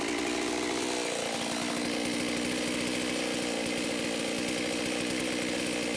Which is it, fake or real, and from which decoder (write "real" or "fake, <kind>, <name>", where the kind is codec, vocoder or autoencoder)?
real